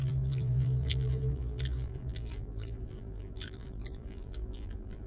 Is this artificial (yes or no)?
yes